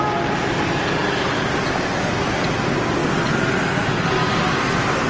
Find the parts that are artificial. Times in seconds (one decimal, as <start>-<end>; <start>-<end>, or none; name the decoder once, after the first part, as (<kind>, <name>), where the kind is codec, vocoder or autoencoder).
none